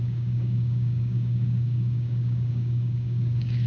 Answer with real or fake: fake